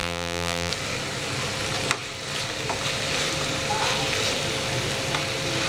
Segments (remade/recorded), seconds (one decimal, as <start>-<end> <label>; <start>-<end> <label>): 0.0-0.7 remade; 0.7-5.7 recorded